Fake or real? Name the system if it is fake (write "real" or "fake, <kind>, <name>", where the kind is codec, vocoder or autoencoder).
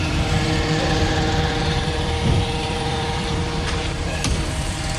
fake, vocoder, BigVGAN v2